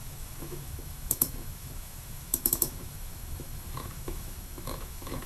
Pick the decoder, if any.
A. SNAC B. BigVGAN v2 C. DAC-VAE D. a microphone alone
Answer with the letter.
C